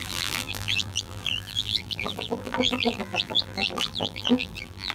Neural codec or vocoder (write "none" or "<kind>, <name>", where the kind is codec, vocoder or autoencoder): vocoder, BigVGAN v2